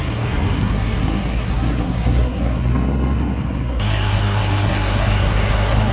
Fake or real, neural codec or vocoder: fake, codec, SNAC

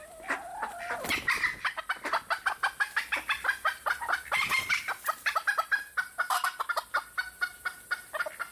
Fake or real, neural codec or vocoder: real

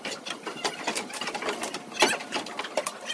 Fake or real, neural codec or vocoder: real